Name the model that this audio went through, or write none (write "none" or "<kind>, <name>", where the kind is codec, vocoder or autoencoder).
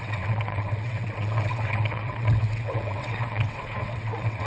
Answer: vocoder, WaveNeXt